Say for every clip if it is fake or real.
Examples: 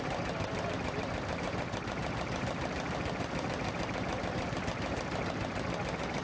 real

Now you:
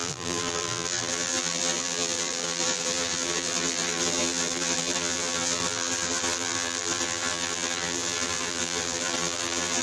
fake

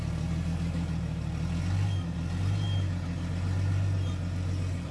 real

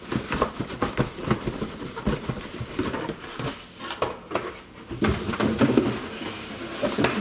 fake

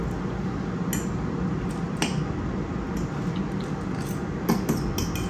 real